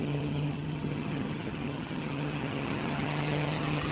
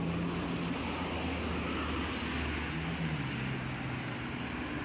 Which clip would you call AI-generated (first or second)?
first